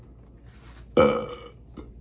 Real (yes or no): yes